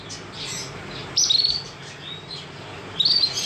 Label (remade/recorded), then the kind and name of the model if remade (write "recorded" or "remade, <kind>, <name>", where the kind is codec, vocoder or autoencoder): recorded